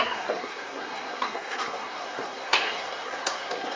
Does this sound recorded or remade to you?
remade